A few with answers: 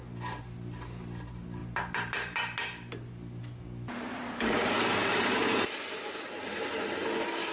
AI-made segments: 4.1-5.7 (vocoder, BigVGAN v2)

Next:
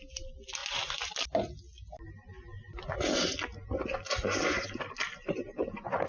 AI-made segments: none

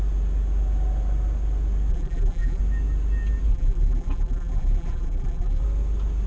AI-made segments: 1.9-2.6 (vocoder, BigVGAN v2); 3.5-5.6

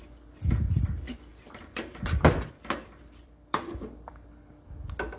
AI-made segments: 1.3-4.3 (vocoder, BigVGAN v2)

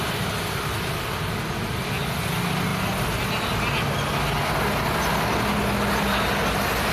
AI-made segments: none

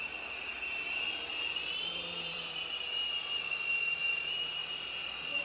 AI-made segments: 0.0-4.6 (vocoder, BigVGAN v2)

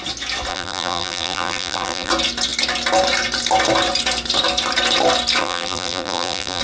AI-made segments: 0.5-2.1 (vocoder, BigVGAN v2); 5.4-6.6